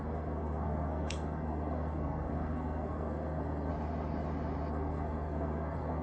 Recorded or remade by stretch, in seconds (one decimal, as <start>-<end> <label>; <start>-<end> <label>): 0.0-3.7 remade; 3.7-4.7 recorded; 4.7-6.0 remade